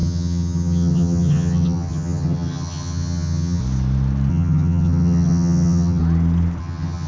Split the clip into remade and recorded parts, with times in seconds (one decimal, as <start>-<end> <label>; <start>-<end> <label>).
0.0-3.6 remade; 3.6-4.3 recorded; 4.3-6.0 remade; 6.0-6.6 recorded; 6.6-7.1 remade

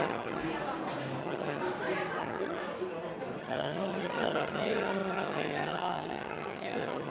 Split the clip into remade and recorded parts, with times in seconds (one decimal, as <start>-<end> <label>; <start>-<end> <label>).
0.0-0.4 remade; 0.4-1.2 recorded; 1.2-1.6 remade; 1.6-2.2 recorded; 2.2-2.6 remade; 2.6-3.4 recorded; 3.4-7.1 remade